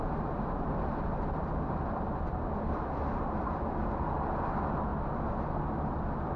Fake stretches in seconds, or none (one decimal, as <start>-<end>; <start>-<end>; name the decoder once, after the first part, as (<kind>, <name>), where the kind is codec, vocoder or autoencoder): none